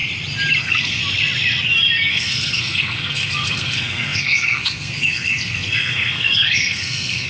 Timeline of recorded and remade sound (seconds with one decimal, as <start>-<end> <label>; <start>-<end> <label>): 0.0-0.6 recorded; 0.6-1.0 remade; 1.0-2.1 recorded; 2.1-7.3 remade